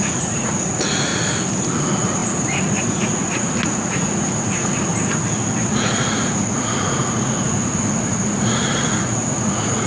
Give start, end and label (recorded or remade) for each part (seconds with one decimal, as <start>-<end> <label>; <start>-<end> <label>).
0.0-1.1 remade; 1.1-1.8 recorded; 1.8-4.9 remade; 4.9-5.7 recorded; 5.7-9.9 remade